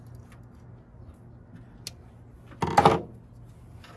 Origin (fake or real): real